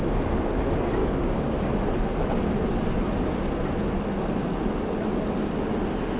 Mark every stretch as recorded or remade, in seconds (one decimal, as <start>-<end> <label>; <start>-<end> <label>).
0.0-1.0 recorded; 1.0-1.6 remade; 1.6-6.2 recorded